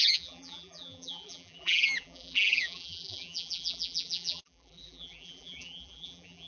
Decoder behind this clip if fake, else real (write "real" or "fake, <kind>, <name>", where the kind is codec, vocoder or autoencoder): fake, vocoder, BigVGAN v2